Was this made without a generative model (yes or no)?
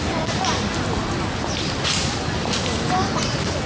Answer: yes